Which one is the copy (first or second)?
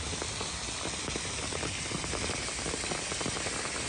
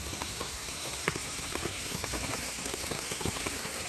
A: second